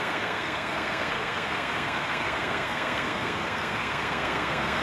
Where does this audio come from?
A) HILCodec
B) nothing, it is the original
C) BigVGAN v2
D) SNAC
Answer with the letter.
D